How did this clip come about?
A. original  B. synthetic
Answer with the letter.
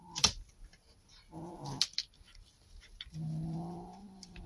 A